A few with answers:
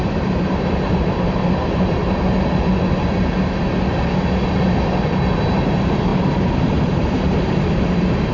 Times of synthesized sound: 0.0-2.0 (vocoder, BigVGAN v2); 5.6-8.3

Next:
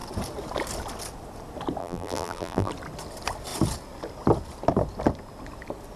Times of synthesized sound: 1.8-2.7 (vocoder, BigVGAN v2)

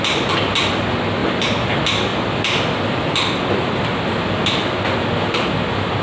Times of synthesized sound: none

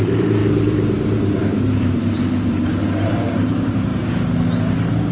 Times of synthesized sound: 0.0-3.9 (vocoder, BigVGAN v2)

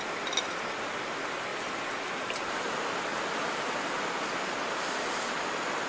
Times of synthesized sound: 1.5-2.7 (vocoder, BigVGAN v2)